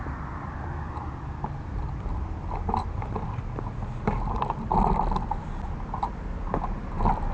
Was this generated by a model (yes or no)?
no